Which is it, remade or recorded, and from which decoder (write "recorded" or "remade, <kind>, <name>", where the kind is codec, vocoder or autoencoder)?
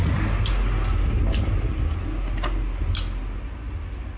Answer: recorded